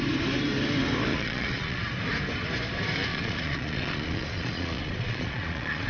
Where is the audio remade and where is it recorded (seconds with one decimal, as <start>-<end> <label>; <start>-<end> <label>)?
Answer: 0.0-1.1 recorded; 1.1-1.8 remade; 1.8-3.1 recorded; 3.1-5.9 remade